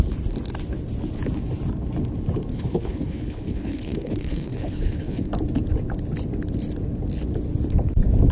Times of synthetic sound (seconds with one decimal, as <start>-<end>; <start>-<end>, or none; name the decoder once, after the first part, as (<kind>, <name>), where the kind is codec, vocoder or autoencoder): 2.5-5.3 (codec, HILCodec)